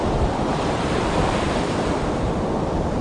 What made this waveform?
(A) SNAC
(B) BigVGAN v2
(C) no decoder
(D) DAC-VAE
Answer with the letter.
C